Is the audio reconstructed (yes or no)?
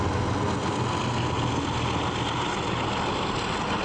no